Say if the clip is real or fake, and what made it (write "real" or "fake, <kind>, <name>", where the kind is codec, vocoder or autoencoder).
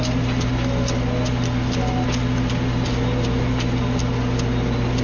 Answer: real